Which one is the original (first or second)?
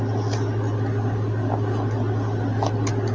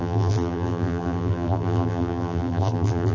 first